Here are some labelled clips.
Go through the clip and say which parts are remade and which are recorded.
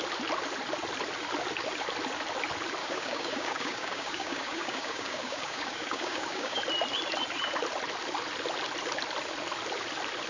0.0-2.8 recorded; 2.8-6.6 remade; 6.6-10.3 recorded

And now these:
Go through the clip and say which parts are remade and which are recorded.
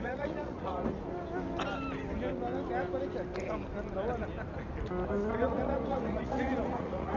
0.0-1.0 remade; 1.0-5.3 recorded; 5.3-7.2 remade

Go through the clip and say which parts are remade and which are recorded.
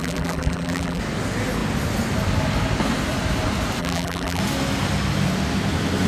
0.0-1.0 remade; 1.0-3.8 recorded; 3.8-4.4 remade; 4.4-6.1 recorded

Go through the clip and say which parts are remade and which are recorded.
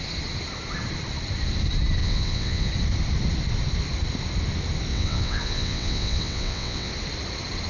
0.0-2.0 recorded; 2.0-2.7 remade; 2.7-4.9 recorded; 4.9-6.9 remade; 6.9-7.7 recorded